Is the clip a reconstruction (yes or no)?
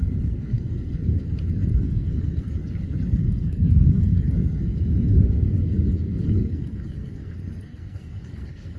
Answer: yes